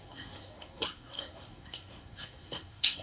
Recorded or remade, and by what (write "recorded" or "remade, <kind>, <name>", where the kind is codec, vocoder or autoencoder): remade, codec, SNAC